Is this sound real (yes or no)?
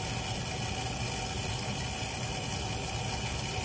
yes